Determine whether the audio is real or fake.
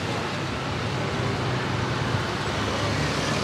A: real